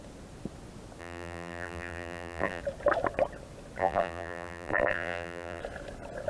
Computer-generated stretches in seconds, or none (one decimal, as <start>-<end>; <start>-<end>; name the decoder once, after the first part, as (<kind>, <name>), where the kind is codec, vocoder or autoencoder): 1.0-2.6 (vocoder, BigVGAN v2); 3.8-5.6